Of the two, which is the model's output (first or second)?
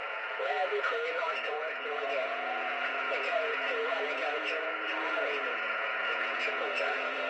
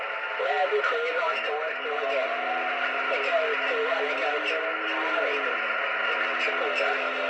first